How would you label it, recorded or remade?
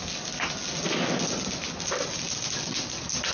recorded